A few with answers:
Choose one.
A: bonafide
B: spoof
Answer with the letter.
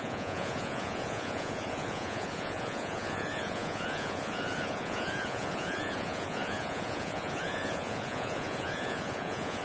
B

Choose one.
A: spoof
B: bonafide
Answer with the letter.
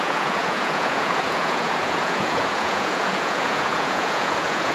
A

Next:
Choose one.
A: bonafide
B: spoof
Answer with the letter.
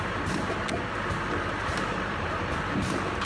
A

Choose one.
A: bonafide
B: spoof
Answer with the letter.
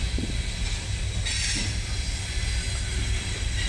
A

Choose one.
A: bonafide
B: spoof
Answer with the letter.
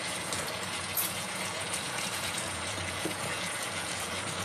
B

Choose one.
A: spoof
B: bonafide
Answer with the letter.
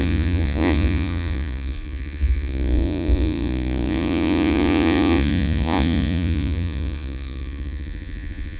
A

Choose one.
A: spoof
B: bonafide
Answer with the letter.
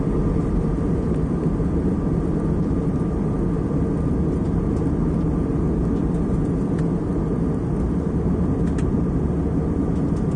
B